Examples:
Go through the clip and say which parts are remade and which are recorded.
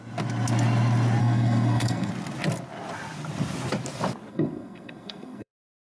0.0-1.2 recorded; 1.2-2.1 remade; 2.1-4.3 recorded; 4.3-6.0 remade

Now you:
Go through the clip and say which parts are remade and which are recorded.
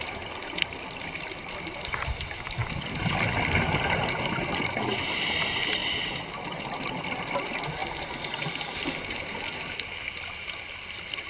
0.0-2.6 remade; 2.6-3.1 recorded; 3.1-5.8 remade; 5.8-6.6 recorded; 6.6-7.8 remade; 7.8-11.3 recorded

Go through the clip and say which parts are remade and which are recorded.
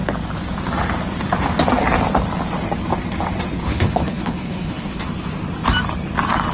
0.0-3.6 recorded; 3.6-5.0 remade; 5.0-6.5 recorded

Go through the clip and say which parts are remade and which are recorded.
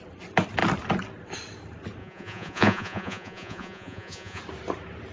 0.0-2.0 recorded; 2.0-4.4 remade; 4.4-5.1 recorded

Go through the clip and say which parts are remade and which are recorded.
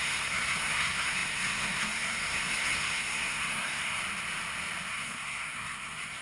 0.0-4.0 remade; 4.0-4.9 recorded; 4.9-6.2 remade